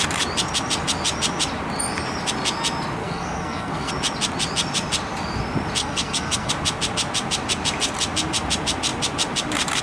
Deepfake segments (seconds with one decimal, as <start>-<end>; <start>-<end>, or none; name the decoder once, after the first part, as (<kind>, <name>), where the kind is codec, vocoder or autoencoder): 3.0-3.9 (codec, SNAC); 5.8-6.5